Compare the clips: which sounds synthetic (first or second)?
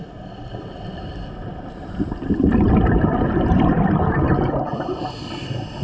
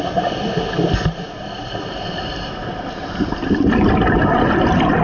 first